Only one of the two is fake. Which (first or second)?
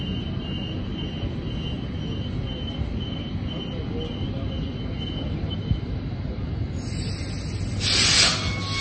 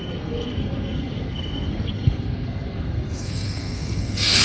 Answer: second